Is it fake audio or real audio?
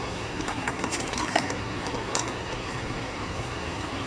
fake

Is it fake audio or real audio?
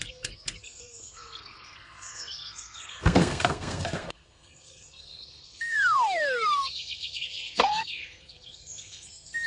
fake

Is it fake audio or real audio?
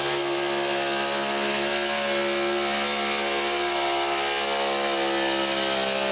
real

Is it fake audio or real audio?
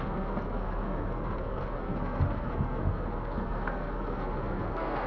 fake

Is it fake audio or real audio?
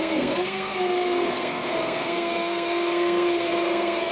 fake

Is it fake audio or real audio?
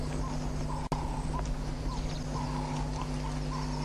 real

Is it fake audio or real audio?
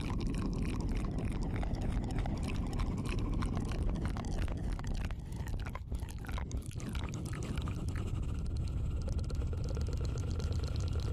real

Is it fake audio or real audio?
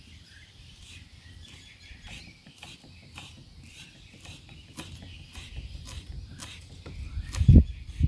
real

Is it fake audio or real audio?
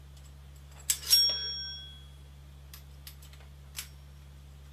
real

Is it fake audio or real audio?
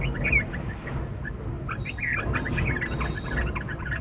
real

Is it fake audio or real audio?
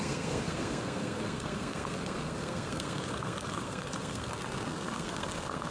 fake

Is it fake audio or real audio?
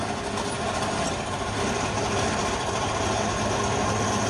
real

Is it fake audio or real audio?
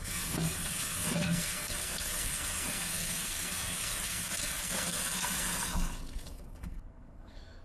fake